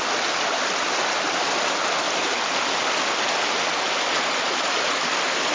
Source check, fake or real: real